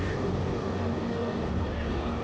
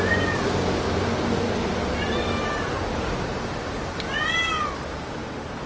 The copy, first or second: first